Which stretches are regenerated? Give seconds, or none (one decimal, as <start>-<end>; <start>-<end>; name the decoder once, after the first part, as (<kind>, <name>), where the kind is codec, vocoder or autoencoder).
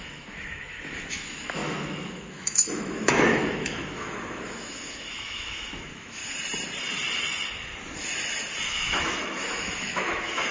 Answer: 0.0-6.2 (autoencoder, DAC-VAE); 8.6-10.5